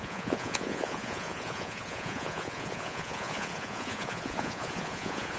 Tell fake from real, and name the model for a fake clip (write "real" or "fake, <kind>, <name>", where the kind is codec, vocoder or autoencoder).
fake, vocoder, Vocos